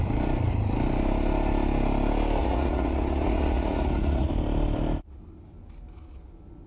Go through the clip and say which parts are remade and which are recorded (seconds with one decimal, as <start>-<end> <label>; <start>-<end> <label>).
0.0-2.4 recorded; 2.4-4.3 remade; 4.3-6.7 recorded